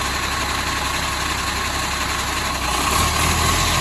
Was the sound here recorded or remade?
recorded